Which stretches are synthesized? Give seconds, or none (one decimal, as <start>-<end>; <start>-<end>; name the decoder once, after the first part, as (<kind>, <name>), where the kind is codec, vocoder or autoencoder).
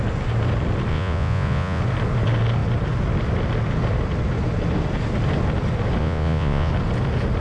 0.9-1.8 (vocoder, Vocos); 6.0-6.7